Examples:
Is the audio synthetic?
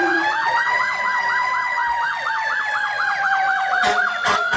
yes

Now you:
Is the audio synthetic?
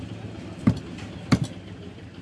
no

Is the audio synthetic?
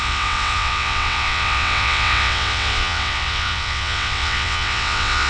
yes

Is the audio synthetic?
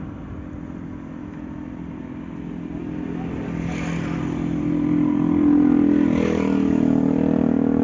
no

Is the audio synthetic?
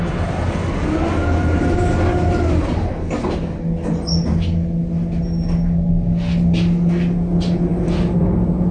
no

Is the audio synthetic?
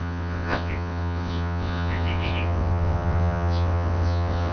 yes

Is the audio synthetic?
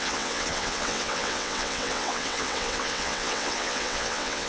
yes